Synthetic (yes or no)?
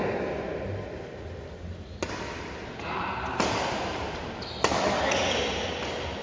no